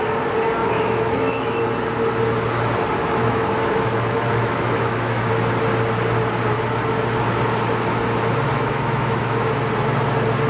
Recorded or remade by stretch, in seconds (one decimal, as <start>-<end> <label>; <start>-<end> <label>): 0.0-0.6 recorded; 0.6-1.6 remade; 1.6-3.0 recorded; 3.0-5.3 remade; 5.3-8.5 recorded; 8.5-9.5 remade; 9.5-10.5 recorded